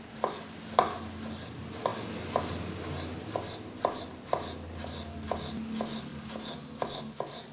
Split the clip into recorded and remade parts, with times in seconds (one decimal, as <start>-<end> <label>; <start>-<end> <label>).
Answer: 0.0-7.5 recorded